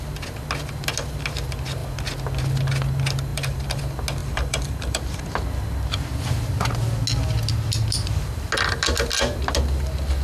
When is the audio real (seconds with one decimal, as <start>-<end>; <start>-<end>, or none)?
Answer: 0.0-3.3; 3.8-4.2; 5.2-10.2